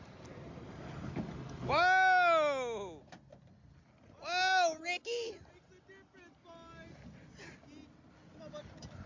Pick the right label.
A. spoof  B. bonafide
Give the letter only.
B